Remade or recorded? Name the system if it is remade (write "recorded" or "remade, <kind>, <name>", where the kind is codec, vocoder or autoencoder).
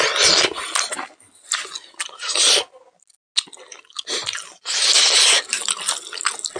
recorded